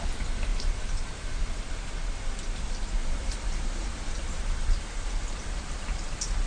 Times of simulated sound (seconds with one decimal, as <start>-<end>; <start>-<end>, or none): 0.5-1.6; 3.0-6.5